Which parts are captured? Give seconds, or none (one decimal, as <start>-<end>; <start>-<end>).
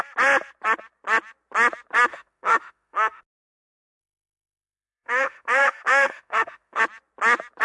0.0-2.1; 3.2-4.0; 6.8-7.6